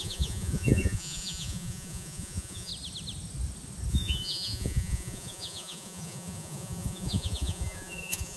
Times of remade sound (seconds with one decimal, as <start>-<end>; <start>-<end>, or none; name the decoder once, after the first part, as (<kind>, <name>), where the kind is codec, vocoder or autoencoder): 0.0-2.7 (vocoder, Vocos); 3.9-8.4